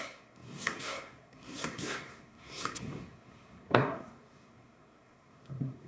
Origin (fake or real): fake